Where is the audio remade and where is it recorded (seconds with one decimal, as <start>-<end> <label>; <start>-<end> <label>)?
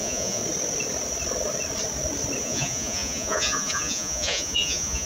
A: 0.0-0.4 remade; 0.4-2.4 recorded; 2.4-5.1 remade